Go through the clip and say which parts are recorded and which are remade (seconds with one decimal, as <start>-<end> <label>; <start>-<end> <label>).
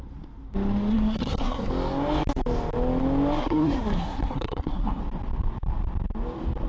0.0-0.9 recorded; 0.9-1.7 remade; 1.7-3.4 recorded; 3.4-5.0 remade; 5.0-6.7 recorded